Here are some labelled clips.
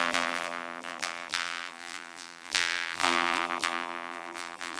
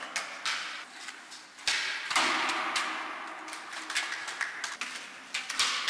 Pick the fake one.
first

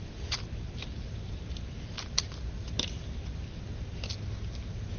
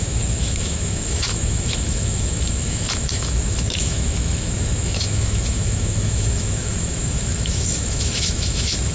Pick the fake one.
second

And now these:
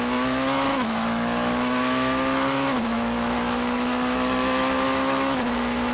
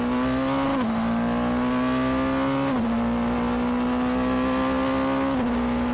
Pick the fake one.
first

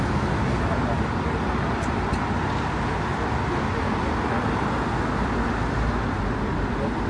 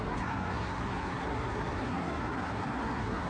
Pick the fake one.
second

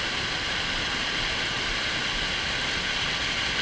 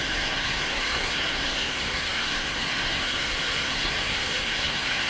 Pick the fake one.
second